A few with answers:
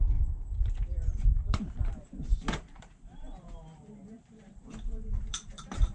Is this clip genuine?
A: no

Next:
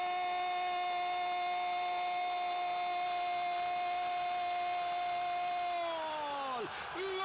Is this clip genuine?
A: yes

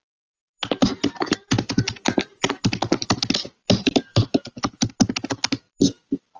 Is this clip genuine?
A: yes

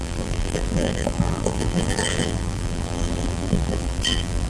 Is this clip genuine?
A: no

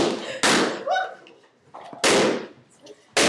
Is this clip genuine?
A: yes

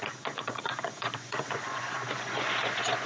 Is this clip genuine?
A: no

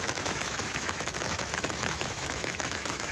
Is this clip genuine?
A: no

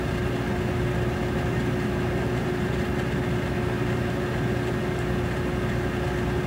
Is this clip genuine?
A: yes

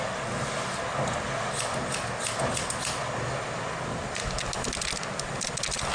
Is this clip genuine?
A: yes